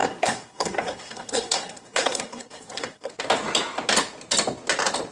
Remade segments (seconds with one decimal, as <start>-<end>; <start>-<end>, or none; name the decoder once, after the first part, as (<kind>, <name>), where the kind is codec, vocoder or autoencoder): 0.0-3.1 (codec, SNAC)